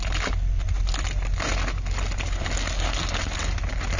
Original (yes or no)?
yes